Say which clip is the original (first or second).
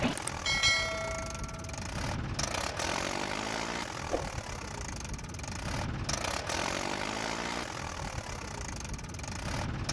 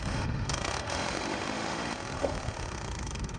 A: first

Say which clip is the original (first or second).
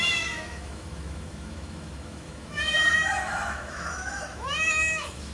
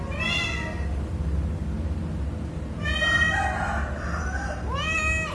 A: second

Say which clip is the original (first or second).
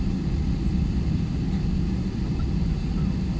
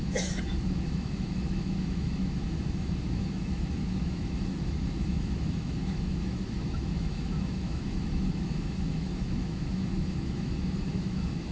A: first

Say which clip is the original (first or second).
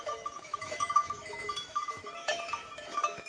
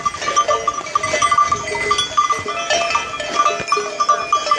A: second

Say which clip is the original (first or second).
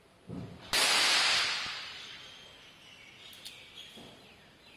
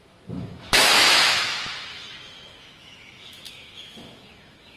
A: first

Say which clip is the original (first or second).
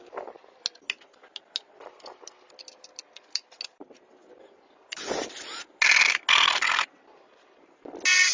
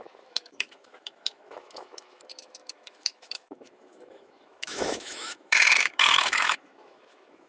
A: first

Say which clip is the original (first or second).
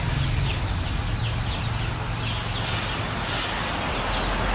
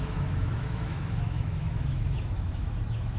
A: first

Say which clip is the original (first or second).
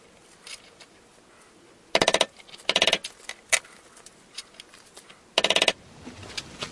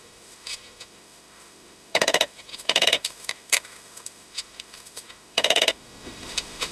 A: first